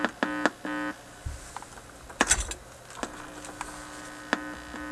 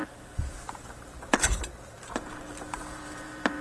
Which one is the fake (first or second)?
second